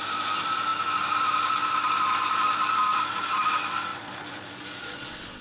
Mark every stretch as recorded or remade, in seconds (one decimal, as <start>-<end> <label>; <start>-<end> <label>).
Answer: 0.0-3.9 recorded; 3.9-5.4 remade